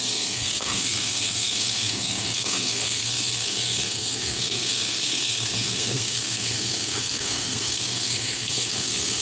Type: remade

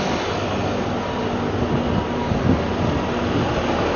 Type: recorded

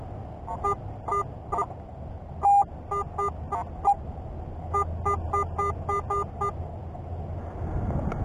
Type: recorded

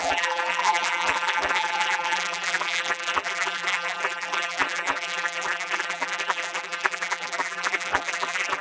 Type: remade